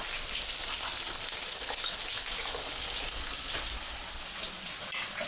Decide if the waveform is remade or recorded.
recorded